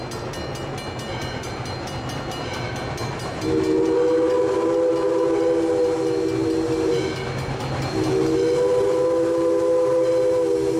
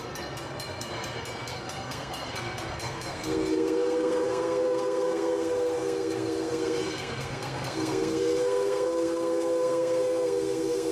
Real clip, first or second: first